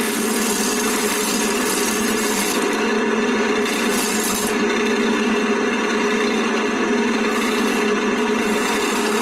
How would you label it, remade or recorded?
recorded